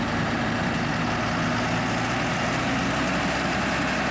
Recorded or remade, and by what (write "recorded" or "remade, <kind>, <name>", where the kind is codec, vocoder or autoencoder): recorded